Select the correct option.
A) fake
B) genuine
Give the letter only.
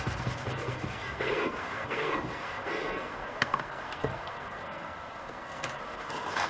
A